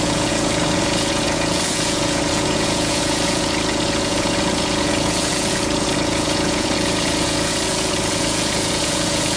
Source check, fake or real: fake